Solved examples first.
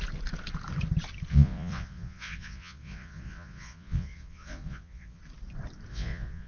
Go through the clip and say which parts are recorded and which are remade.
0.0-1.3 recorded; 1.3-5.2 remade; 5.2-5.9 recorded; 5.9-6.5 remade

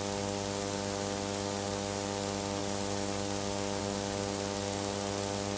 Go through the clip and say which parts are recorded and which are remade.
0.0-5.6 recorded

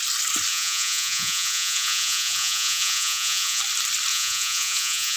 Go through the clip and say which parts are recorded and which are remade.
0.0-0.5 recorded; 0.5-3.6 remade; 3.6-4.1 recorded; 4.1-5.2 remade

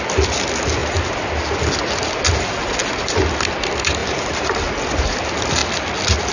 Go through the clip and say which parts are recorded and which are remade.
0.0-6.3 recorded

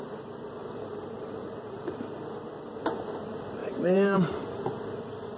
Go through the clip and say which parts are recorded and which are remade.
0.0-0.6 recorded; 0.6-2.0 remade; 2.0-3.6 recorded; 3.6-4.4 remade; 4.4-5.4 recorded

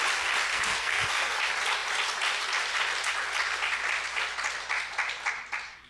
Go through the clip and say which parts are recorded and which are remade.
0.0-0.5 recorded; 0.5-1.4 remade; 1.4-5.9 recorded

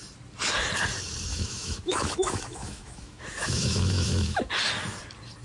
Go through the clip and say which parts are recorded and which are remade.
0.0-1.3 recorded; 1.3-4.5 remade; 4.5-5.4 recorded